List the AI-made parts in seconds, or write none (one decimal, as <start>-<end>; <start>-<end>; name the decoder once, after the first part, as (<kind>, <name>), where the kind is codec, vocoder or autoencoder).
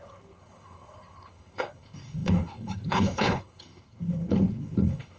0.0-5.2 (codec, HILCodec)